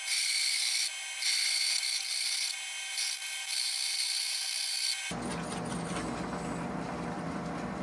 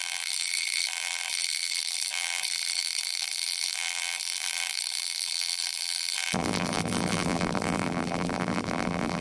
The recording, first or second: first